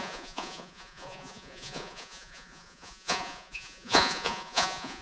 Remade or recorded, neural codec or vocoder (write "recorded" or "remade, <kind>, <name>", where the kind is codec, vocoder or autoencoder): remade, vocoder, Vocos